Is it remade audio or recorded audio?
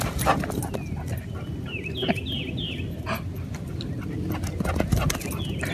recorded